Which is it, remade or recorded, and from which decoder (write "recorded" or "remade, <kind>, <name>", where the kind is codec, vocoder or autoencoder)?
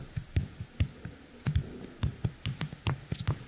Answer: recorded